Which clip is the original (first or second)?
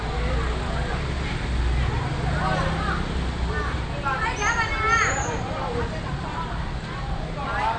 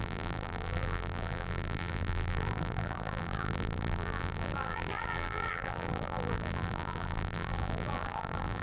first